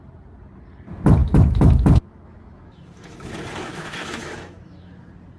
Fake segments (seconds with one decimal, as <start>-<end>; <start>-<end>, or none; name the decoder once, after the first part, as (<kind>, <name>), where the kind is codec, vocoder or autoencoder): 1.2-3.3 (autoencoder, DAC-VAE); 3.7-4.9